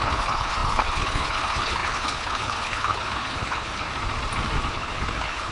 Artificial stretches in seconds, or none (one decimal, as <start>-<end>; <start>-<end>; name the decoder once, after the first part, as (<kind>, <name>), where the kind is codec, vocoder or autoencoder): 0.0-3.9 (codec, HILCodec); 4.7-5.5